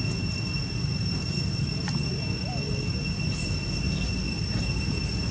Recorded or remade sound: recorded